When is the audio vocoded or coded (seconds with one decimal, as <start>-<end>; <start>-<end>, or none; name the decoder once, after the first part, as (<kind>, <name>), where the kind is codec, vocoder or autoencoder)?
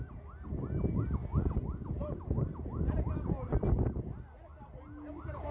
none